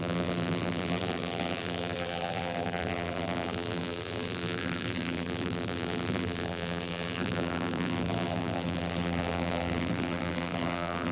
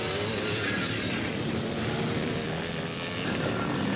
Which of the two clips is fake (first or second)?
first